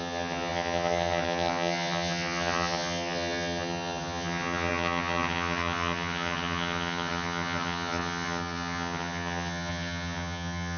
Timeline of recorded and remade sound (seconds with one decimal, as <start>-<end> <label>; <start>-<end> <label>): 0.0-10.8 remade